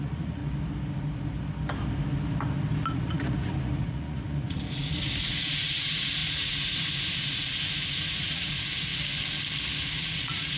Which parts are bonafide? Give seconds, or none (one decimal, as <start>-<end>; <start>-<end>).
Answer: 0.4-2.9; 8.9-9.9